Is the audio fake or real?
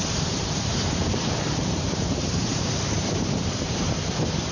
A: fake